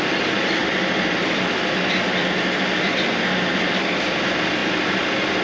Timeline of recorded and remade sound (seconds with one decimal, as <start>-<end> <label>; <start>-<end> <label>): 0.0-0.6 recorded; 0.6-3.1 remade; 3.1-4.6 recorded; 4.6-5.4 remade